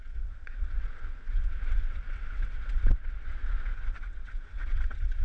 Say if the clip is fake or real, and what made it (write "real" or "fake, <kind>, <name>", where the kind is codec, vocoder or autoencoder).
fake, vocoder, WaveNeXt